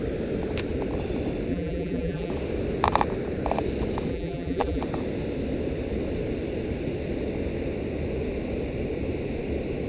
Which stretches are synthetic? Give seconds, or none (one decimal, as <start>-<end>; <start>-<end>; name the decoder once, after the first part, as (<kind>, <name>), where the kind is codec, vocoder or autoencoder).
1.5-2.3 (vocoder, BigVGAN v2); 4.1-4.8

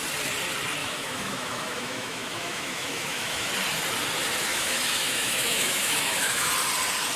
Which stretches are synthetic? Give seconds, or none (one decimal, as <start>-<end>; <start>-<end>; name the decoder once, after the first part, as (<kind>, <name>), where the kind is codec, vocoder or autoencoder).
0.8-3.5 (autoencoder, DAC-VAE); 4.5-6.5

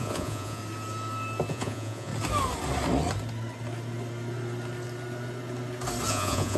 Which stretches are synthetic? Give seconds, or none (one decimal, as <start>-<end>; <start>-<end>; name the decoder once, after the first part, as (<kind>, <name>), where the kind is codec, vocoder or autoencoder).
0.0-0.6 (vocoder, Vocos); 1.5-2.1; 6.1-6.6

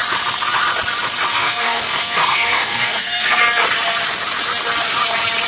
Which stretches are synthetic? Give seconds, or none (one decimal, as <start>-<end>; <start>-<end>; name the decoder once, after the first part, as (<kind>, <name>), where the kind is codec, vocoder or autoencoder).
1.3-3.4 (codec, SNAC)

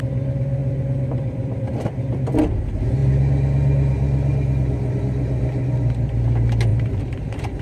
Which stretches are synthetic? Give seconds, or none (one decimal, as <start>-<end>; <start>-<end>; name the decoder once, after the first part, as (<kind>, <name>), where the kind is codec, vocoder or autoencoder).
0.6-1.7 (vocoder, BigVGAN v2); 6.7-7.6

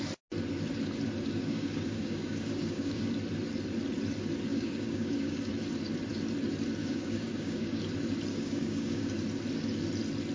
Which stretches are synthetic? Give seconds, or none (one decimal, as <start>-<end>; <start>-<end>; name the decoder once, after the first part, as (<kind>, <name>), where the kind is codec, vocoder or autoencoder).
1.4-3.0 (codec, DAC); 4.5-5.5; 6.8-7.8; 8.3-9.1

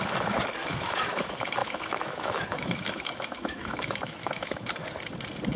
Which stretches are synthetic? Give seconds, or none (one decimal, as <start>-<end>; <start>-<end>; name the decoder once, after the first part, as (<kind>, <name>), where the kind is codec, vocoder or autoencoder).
0.6-1.2 (autoencoder, DAC-VAE); 1.6-4.7